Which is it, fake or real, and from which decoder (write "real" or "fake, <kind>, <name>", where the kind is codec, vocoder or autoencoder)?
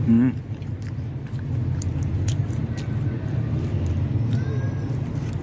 real